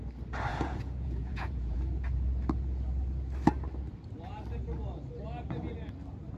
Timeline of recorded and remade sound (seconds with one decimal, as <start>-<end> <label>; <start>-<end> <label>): 0.0-0.5 recorded; 0.5-1.8 remade; 1.8-6.4 recorded